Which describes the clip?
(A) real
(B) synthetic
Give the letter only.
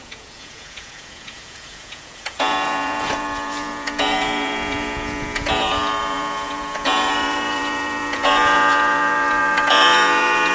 B